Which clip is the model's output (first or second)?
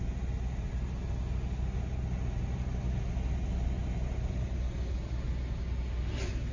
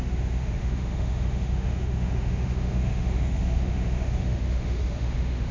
second